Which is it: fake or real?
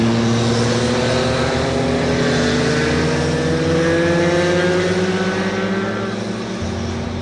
real